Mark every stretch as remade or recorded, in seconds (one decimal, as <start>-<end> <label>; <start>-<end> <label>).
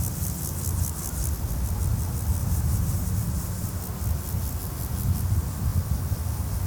0.0-2.4 recorded; 2.4-3.8 remade; 3.8-6.7 recorded